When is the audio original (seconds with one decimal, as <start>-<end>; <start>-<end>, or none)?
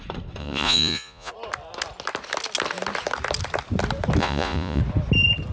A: 0.0-0.4; 1.3-4.2; 4.8-5.5